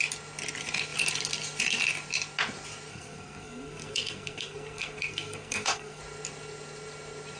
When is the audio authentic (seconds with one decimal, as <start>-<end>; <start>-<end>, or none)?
0.0-2.9; 6.0-7.4